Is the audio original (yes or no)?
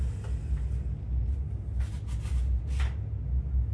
yes